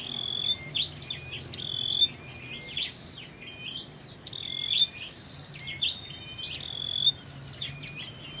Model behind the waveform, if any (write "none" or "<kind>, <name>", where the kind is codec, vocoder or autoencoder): none